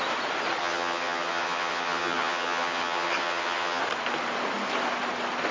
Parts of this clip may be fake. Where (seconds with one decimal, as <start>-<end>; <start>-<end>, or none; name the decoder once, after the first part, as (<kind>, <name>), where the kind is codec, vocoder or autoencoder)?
0.6-3.8 (vocoder, HiFi-GAN)